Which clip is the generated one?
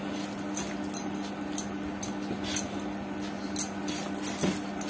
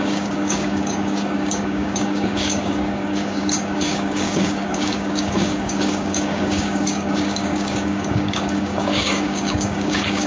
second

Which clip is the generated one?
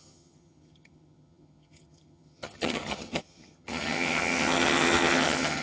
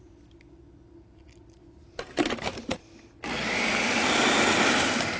first